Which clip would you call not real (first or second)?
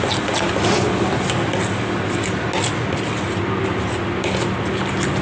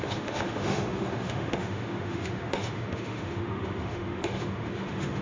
second